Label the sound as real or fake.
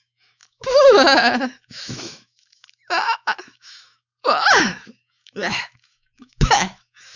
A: fake